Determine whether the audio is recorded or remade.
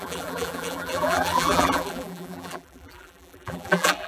remade